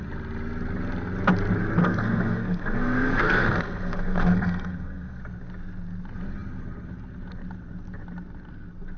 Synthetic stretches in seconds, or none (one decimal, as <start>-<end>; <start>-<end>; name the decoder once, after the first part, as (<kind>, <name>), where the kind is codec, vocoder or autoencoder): 1.8-5.2 (codec, SNAC)